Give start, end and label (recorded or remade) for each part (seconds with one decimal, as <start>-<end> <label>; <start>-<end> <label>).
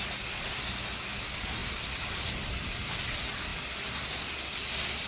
0.0-1.6 recorded; 1.6-2.2 remade; 2.2-3.5 recorded; 3.5-4.3 remade; 4.3-5.1 recorded